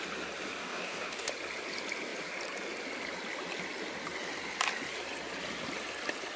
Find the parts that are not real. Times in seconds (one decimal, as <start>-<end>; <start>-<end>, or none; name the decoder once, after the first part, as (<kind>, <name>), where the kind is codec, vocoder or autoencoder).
0.6-1.3 (codec, DAC)